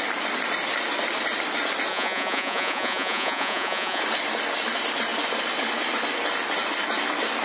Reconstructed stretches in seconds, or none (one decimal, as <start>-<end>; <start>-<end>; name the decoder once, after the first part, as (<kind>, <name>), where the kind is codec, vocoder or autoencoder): 1.9-4.0 (vocoder, Vocos)